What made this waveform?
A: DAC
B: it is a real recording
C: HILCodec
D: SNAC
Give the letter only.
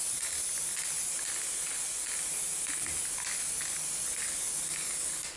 B